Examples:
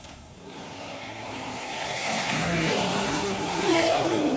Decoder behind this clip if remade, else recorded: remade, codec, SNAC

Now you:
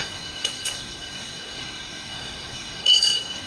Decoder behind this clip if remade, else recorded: remade, codec, SNAC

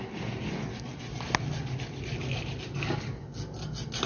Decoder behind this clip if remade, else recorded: recorded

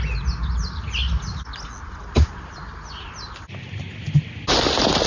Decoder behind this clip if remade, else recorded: recorded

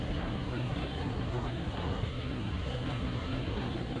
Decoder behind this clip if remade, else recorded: remade, codec, SNAC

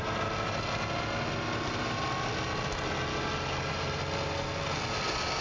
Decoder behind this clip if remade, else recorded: recorded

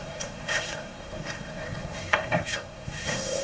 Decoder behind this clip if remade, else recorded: remade, codec, SNAC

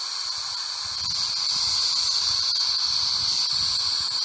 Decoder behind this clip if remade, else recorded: recorded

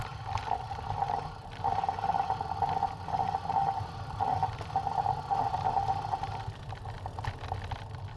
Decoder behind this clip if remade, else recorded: recorded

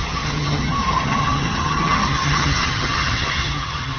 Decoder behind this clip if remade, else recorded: remade, vocoder, HiFi-GAN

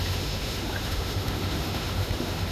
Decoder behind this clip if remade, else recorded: remade, autoencoder, DAC-VAE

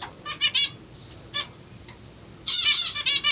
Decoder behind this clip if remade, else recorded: recorded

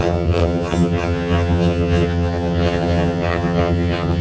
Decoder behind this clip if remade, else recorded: remade, vocoder, HiFi-GAN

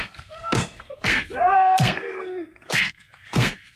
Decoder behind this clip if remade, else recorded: remade, codec, SNAC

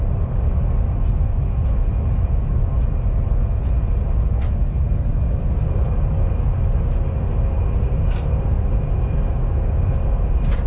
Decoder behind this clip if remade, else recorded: recorded